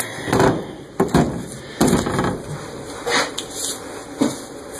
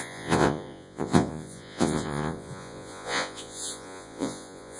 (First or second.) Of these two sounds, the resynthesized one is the second